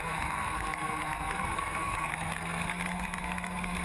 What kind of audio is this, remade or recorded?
remade